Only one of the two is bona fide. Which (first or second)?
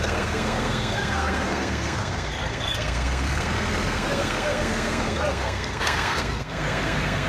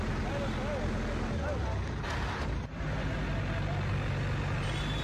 second